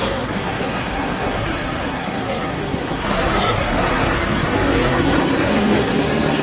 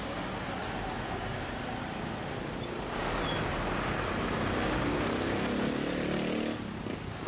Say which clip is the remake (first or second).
first